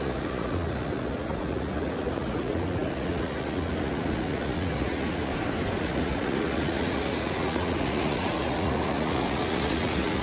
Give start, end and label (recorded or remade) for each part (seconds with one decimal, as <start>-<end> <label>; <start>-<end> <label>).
0.0-5.3 remade; 5.3-5.8 recorded; 5.8-10.2 remade